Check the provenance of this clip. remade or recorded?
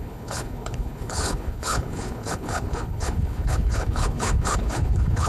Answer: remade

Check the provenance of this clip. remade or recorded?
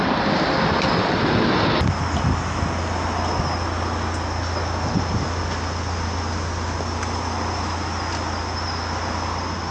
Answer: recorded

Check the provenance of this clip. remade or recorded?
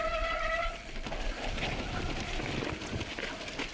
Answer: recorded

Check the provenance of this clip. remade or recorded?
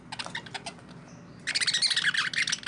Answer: recorded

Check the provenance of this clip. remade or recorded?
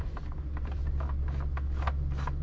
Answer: recorded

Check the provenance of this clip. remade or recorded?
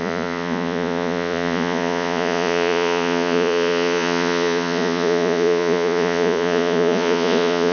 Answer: remade